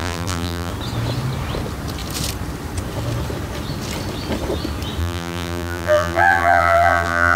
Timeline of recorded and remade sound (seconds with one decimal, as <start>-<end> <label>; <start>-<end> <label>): 0.0-0.7 remade; 0.7-5.0 recorded; 5.0-7.4 remade